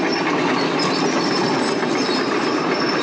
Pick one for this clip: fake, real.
fake